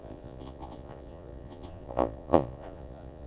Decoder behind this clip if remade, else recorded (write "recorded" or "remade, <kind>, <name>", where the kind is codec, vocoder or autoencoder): remade, vocoder, Vocos